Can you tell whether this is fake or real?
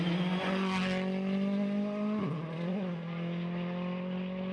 real